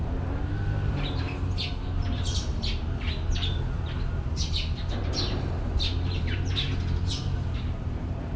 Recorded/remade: remade